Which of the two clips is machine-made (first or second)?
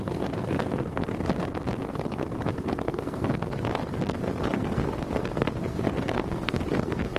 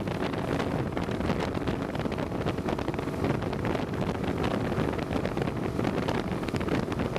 first